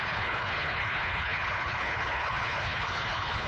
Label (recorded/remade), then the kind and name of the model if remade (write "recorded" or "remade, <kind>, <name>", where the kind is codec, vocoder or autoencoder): remade, codec, HILCodec